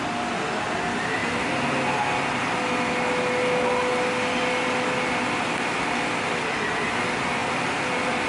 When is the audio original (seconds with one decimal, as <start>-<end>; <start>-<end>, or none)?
0.0-8.3